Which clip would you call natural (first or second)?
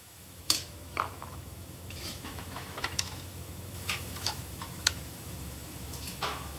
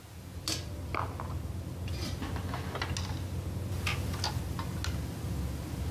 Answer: second